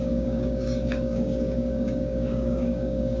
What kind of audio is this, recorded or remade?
remade